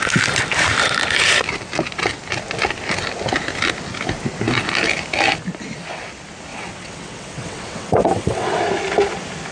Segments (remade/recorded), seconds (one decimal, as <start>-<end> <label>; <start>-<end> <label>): 0.0-6.5 recorded; 6.5-8.6 remade; 8.6-9.5 recorded